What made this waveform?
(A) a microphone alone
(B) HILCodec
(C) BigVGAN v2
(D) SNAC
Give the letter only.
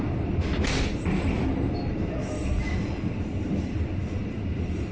C